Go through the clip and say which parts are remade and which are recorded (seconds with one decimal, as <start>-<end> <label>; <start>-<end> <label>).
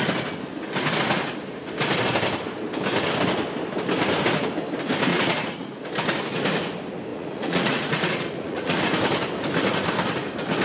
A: 0.0-5.1 recorded; 5.1-5.8 remade; 5.8-7.1 recorded; 7.1-8.8 remade; 8.8-10.6 recorded